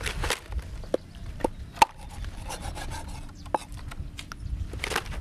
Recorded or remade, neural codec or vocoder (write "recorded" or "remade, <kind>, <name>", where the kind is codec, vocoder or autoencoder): recorded